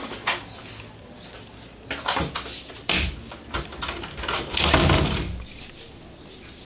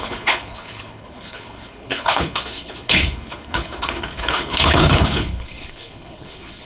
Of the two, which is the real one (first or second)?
first